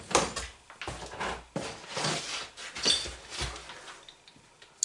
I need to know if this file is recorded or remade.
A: recorded